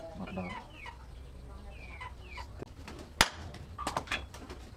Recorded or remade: recorded